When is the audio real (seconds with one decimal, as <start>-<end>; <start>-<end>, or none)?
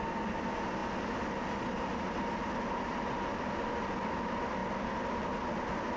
0.0-6.0